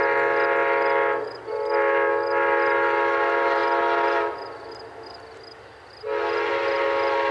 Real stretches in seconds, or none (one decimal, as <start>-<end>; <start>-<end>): 0.0-7.3